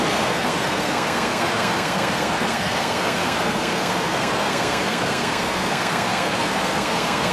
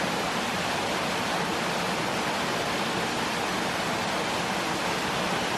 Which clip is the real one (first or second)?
second